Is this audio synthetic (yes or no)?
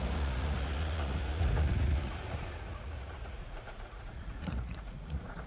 yes